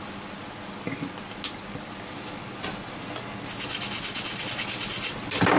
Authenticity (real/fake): real